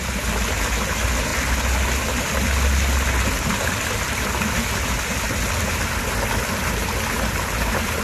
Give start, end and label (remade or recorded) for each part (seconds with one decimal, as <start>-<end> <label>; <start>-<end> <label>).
0.0-8.0 recorded